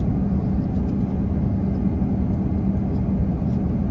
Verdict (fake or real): real